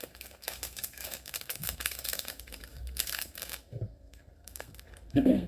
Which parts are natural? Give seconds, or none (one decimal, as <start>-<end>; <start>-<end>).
none